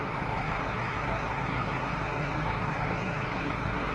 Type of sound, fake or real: fake